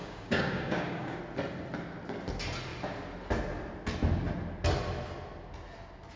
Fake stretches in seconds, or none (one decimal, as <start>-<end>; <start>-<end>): 0.0-1.2